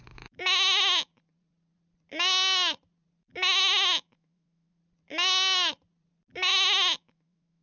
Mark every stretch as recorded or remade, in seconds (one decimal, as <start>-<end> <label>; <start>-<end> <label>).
0.0-1.1 remade; 1.1-3.2 recorded; 3.2-4.8 remade; 4.8-6.5 recorded; 6.5-7.6 remade